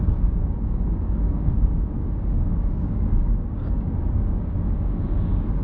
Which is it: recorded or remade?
remade